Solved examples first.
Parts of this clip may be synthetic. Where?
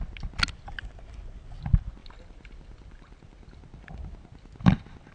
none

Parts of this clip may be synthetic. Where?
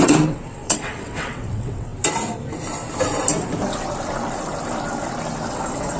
0.0-1.9 (vocoder, WaveNeXt); 5.5-6.0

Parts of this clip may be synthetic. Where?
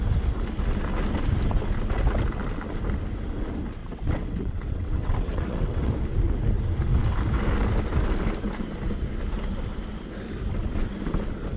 3.8-5.9 (vocoder, WaveNeXt)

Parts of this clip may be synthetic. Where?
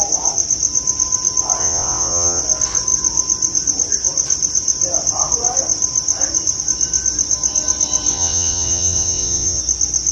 1.6-2.4 (vocoder, WaveNeXt); 8.1-9.6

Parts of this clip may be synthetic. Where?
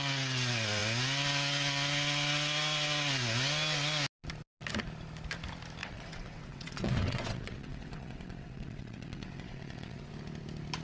5.8-10.1 (vocoder, WaveNeXt)